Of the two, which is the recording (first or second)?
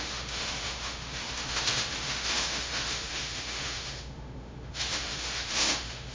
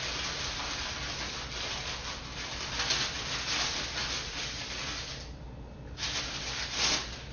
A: second